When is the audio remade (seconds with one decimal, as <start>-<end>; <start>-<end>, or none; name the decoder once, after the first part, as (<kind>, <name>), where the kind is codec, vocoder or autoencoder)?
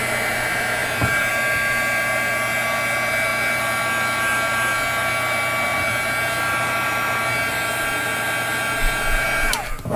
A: none